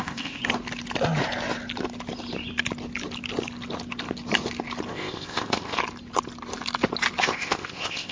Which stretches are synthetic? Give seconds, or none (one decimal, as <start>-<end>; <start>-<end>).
0.0-0.4; 4.9-5.8; 7.2-8.1